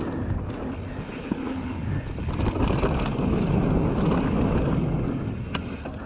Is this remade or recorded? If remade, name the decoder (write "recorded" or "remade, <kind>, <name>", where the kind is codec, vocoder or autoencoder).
recorded